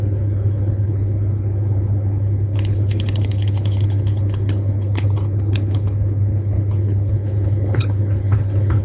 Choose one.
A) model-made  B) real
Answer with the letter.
A